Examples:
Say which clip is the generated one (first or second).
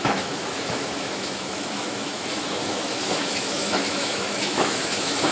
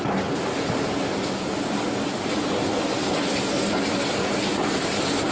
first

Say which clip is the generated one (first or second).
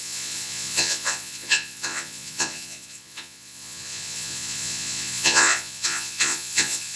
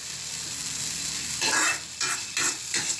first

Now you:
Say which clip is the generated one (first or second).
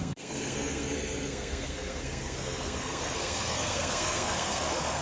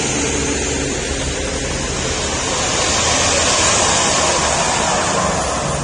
first